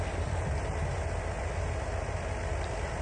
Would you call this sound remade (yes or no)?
yes